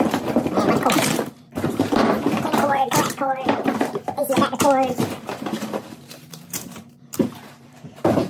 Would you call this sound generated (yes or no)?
yes